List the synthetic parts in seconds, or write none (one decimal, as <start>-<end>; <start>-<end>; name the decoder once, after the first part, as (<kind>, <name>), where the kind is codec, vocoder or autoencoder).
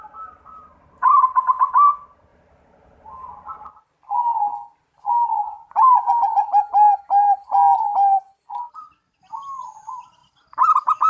none